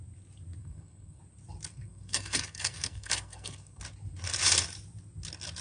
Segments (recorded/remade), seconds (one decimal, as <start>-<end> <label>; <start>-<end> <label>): 0.0-0.6 recorded; 0.6-1.2 remade; 1.2-1.7 recorded; 1.7-3.8 remade; 3.8-5.6 recorded